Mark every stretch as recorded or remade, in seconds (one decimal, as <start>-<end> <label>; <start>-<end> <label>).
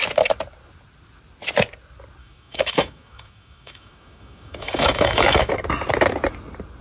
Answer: 0.0-2.2 recorded; 2.2-5.5 remade; 5.5-6.8 recorded